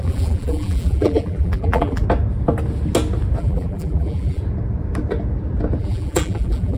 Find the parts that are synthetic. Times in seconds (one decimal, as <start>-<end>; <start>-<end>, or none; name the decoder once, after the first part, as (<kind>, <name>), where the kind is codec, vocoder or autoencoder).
0.0-2.0 (vocoder, BigVGAN v2); 3.4-4.4; 5.8-6.8